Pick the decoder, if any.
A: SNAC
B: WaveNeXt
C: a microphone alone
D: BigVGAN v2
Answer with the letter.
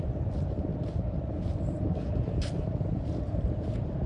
D